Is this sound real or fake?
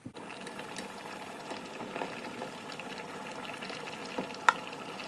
real